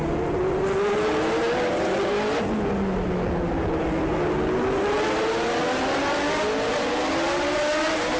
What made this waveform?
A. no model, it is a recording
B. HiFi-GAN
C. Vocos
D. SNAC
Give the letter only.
A